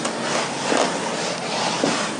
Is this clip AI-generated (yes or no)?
no